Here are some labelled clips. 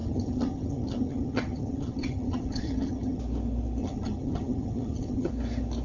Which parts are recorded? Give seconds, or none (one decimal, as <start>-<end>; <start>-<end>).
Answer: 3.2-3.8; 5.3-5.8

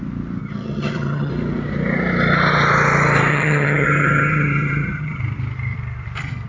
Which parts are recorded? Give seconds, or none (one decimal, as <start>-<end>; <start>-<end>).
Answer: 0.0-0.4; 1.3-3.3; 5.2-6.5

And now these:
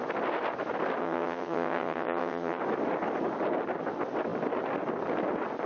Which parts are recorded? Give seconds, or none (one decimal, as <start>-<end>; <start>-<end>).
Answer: 0.0-1.0; 2.6-5.7

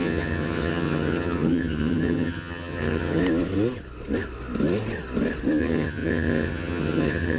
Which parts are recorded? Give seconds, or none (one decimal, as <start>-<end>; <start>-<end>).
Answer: 3.2-5.6